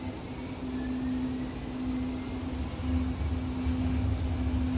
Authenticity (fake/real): real